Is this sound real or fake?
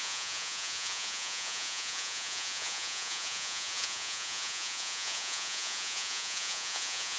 fake